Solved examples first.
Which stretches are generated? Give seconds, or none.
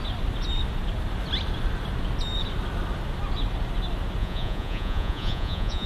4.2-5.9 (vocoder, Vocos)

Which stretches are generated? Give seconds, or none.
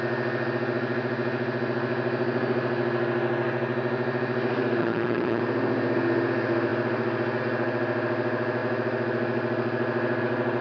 4.8-5.4 (vocoder, HiFi-GAN)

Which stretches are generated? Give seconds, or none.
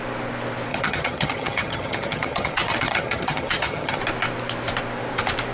0.7-4.0 (vocoder, HiFi-GAN)